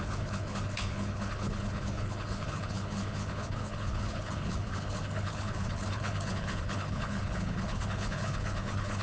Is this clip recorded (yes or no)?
no